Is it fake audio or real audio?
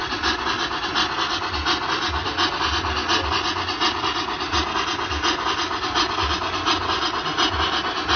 real